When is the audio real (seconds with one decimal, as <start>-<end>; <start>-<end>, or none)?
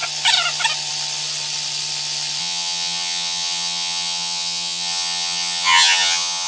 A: 0.0-2.4